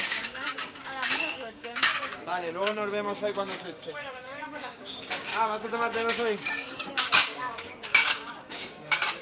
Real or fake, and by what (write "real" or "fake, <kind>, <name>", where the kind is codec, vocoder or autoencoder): fake, codec, DAC